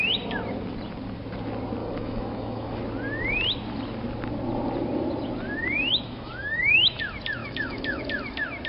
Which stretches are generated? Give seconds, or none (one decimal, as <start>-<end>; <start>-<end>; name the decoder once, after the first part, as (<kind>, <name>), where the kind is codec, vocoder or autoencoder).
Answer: 1.8-2.8 (autoencoder, DAC-VAE); 5.9-7.0; 7.4-8.0